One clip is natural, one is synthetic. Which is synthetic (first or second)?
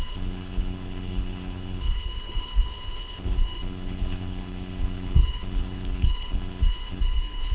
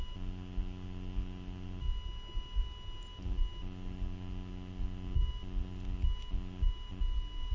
first